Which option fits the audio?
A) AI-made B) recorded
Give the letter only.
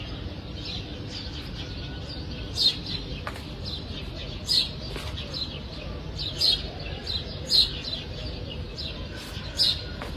B